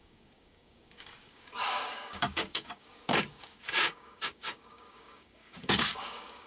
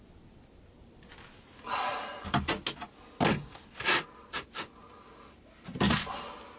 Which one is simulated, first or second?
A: first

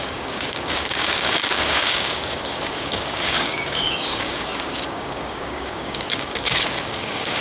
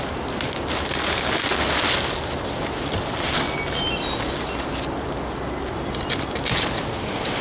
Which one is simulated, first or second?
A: first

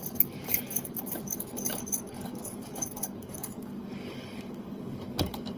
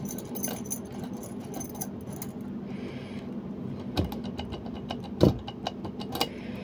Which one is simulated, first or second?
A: first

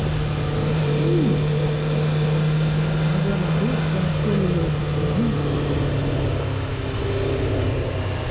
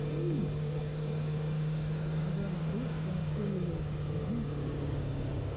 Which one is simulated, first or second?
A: second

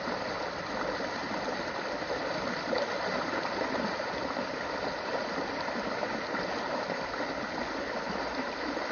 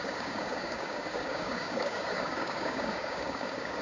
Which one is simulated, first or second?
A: second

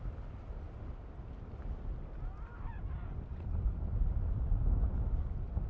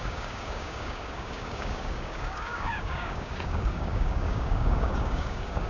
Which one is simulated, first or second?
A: second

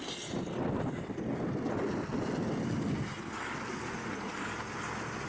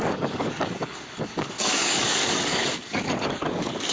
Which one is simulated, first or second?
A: second